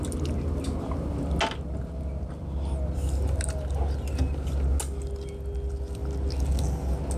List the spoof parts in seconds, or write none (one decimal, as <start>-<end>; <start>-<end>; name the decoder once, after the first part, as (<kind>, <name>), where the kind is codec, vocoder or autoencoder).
none